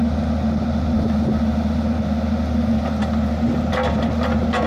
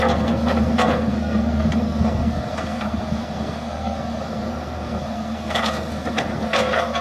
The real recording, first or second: first